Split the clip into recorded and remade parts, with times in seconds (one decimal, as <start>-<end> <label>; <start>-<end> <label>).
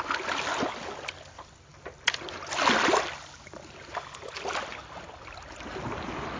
0.0-6.4 recorded